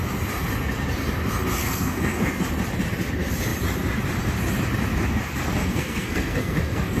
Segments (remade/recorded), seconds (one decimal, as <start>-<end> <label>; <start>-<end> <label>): 0.0-1.6 recorded; 1.6-2.4 remade; 2.4-5.5 recorded; 5.5-7.0 remade